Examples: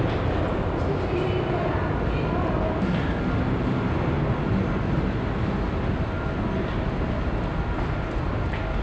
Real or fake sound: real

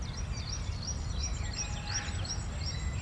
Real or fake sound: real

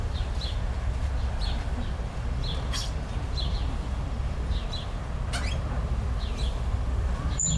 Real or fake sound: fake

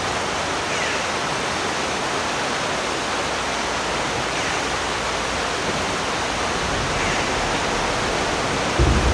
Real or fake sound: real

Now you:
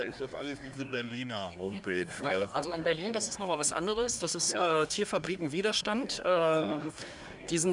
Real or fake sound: fake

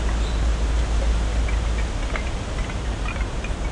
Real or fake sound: real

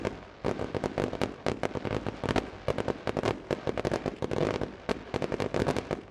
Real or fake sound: real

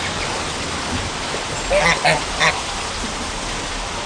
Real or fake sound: real